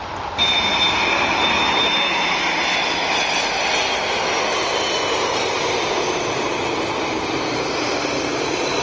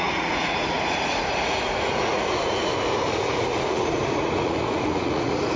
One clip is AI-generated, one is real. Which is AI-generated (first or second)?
second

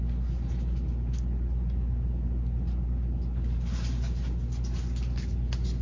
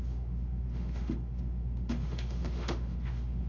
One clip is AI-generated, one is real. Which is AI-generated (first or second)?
second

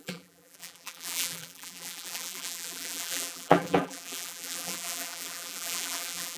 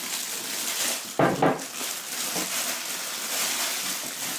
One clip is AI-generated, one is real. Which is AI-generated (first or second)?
first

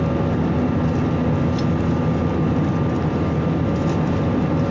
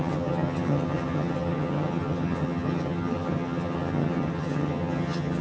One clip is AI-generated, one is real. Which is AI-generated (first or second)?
second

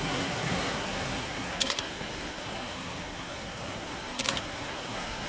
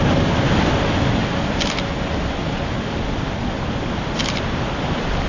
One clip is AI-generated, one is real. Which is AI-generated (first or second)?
first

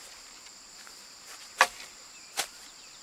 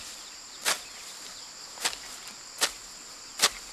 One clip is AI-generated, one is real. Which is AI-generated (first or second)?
first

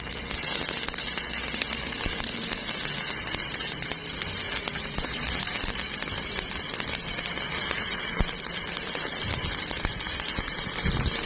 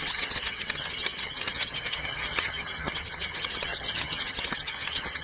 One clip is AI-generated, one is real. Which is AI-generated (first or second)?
second